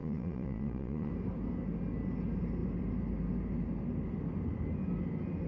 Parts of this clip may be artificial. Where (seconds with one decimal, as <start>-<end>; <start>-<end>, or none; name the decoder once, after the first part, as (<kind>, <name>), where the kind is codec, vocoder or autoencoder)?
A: 0.0-1.1 (vocoder, Vocos)